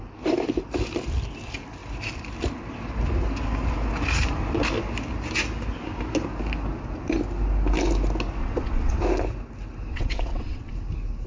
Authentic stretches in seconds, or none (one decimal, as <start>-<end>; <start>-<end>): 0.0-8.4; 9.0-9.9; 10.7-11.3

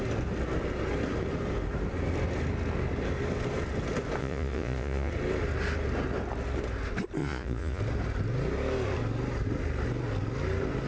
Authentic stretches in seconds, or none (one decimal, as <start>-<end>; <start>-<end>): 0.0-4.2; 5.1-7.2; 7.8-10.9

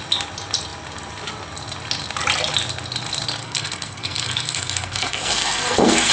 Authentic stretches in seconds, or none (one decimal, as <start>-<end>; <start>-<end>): 0.0-3.4

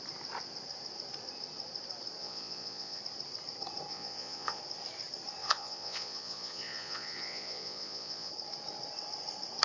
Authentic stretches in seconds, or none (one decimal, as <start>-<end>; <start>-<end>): 0.0-2.2; 3.0-3.9; 4.6-5.4; 8.3-9.6

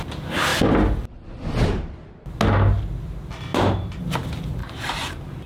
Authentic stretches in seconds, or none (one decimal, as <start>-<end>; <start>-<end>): 0.0-3.5; 4.0-4.6